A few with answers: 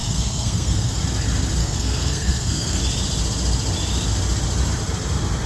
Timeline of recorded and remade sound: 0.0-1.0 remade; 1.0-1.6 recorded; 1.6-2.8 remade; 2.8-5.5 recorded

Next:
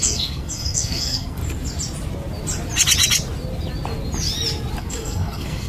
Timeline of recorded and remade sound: 0.0-1.4 remade; 1.4-4.8 recorded; 4.8-5.7 remade

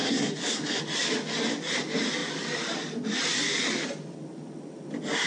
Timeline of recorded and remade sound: 0.0-0.8 remade; 0.8-5.3 recorded

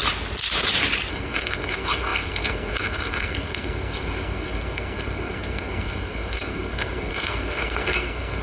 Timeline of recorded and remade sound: 0.0-1.1 recorded; 1.1-8.4 remade

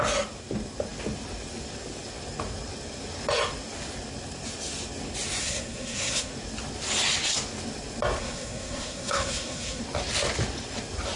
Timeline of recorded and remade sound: 0.0-5.4 recorded; 5.4-6.3 remade; 6.3-8.2 recorded; 8.2-9.8 remade; 9.8-11.2 recorded

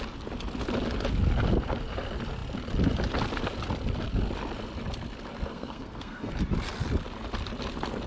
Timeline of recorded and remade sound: 0.0-5.5 recorded; 5.5-6.3 remade; 6.3-8.1 recorded

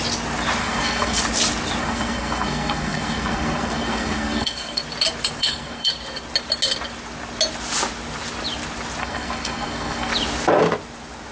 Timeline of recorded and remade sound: 0.0-0.6 recorded; 0.6-1.2 remade; 1.2-1.8 recorded; 1.8-4.8 remade; 4.8-5.4 recorded; 5.4-5.9 remade; 5.9-9.0 recorded; 9.0-10.1 remade; 10.1-11.3 recorded

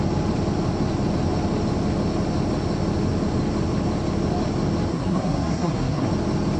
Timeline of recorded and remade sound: 0.0-4.9 recorded; 4.9-6.1 remade; 6.1-6.6 recorded